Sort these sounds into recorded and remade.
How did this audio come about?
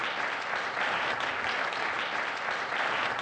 recorded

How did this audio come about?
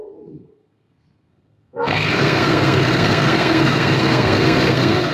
remade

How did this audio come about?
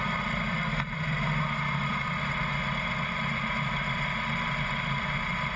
recorded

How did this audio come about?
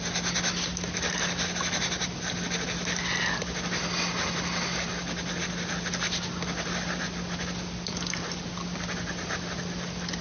recorded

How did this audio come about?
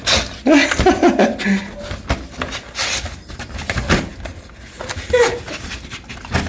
recorded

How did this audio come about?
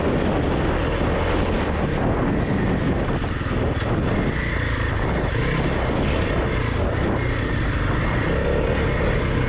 recorded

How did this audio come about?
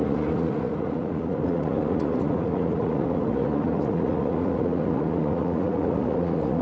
remade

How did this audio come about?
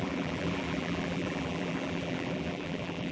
remade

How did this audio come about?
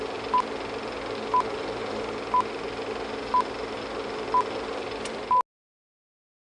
recorded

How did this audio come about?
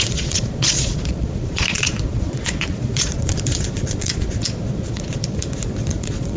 remade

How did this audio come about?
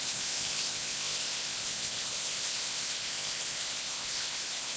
remade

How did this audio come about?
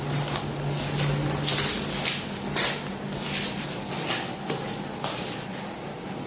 remade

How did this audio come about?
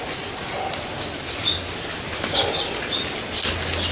recorded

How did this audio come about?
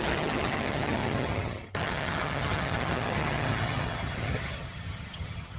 remade